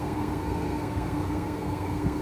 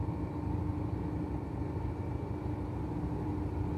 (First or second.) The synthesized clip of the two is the first